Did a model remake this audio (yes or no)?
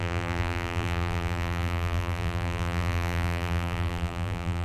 yes